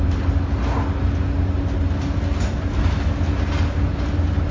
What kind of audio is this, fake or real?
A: real